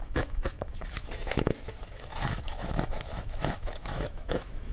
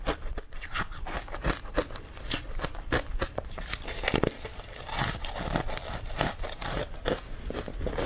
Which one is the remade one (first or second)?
first